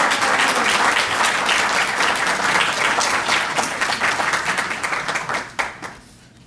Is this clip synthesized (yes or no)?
no